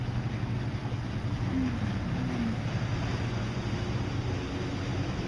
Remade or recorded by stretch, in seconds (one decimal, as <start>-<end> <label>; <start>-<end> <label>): 0.0-3.1 recorded; 3.1-3.6 remade; 3.6-5.3 recorded